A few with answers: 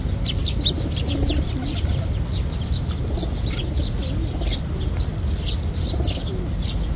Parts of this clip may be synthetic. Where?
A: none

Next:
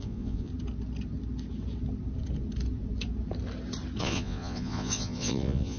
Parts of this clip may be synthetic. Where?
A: 0.0-0.5 (vocoder, Vocos); 4.0-5.8

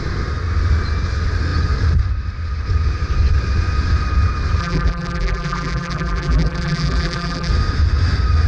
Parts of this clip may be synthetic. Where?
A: 4.6-7.5 (vocoder, BigVGAN v2)

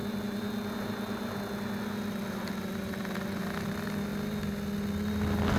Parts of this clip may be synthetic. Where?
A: none

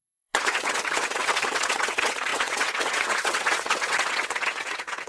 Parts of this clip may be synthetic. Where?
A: 0.0-5.1 (vocoder, WaveNeXt)